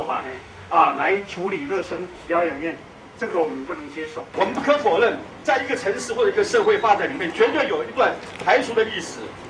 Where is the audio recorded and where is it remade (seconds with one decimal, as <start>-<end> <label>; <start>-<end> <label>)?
0.0-2.5 remade; 2.5-3.3 recorded; 3.3-4.2 remade; 4.2-9.5 recorded